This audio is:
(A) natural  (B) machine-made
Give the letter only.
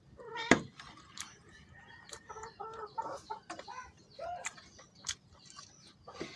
B